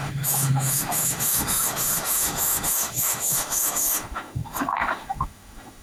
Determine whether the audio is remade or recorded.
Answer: remade